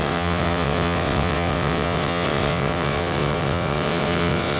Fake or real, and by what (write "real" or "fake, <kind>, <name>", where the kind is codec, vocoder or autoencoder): fake, vocoder, WaveNeXt